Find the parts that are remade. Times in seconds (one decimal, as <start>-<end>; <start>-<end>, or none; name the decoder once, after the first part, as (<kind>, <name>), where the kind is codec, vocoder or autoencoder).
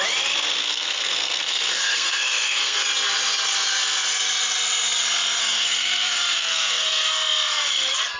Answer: 0.6-2.8 (codec, SNAC); 5.4-7.1